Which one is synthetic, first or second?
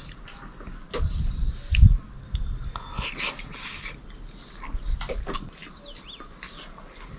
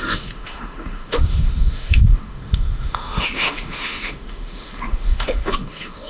second